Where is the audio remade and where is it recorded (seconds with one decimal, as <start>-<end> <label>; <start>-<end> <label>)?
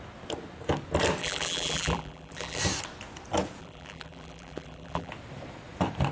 0.0-1.2 recorded; 1.2-2.6 remade; 2.6-3.6 recorded; 3.6-5.1 remade; 5.1-6.1 recorded